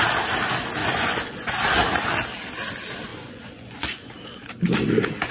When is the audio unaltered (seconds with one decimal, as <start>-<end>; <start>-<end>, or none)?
0.0-0.8; 1.5-3.1; 4.1-5.3